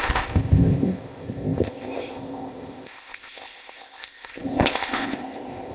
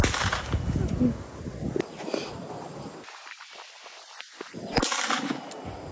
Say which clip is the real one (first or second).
second